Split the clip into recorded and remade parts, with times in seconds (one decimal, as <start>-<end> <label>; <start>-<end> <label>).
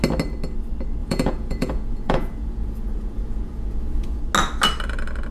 0.0-1.0 recorded; 1.0-4.2 remade; 4.2-5.3 recorded